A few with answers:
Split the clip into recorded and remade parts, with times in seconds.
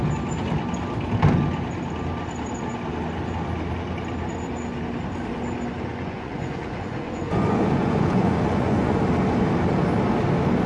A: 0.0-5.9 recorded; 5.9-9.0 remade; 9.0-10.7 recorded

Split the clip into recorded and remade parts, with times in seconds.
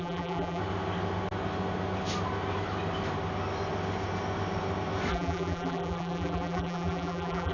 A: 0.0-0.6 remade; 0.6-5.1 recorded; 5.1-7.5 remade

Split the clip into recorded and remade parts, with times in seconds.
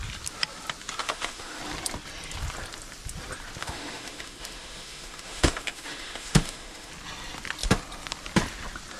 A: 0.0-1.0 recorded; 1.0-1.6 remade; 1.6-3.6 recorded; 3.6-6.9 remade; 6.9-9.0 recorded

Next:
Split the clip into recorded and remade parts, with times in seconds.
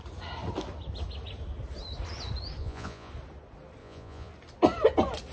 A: 0.0-2.6 recorded; 2.6-3.1 remade; 3.1-3.8 recorded; 3.8-4.3 remade; 4.3-5.3 recorded